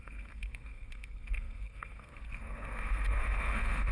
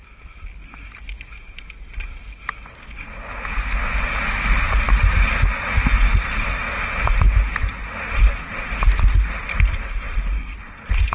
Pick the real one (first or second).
second